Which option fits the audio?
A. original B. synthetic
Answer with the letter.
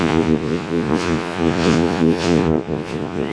B